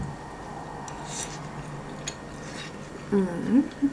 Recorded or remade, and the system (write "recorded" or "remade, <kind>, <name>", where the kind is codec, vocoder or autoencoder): recorded